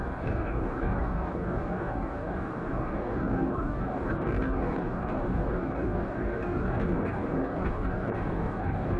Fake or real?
fake